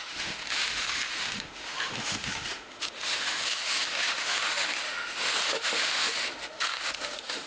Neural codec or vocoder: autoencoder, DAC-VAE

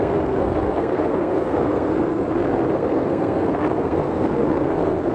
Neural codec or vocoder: codec, SNAC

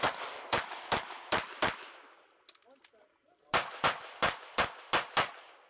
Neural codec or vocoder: none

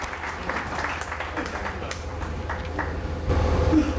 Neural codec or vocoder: none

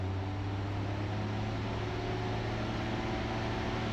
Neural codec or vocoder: none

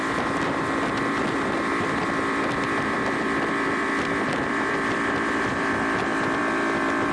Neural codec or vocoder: vocoder, BigVGAN v2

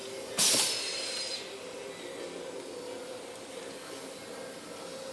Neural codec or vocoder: none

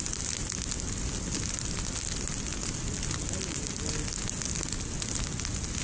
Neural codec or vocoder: none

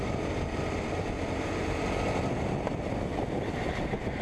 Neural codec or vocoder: none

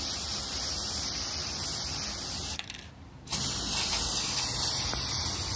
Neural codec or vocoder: vocoder, BigVGAN v2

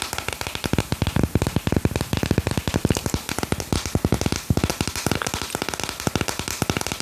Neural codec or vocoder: none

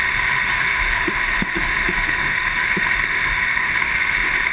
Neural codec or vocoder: autoencoder, DAC-VAE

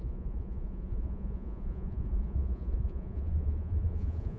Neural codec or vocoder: vocoder, Vocos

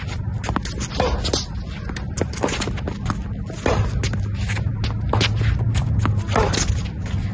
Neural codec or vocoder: none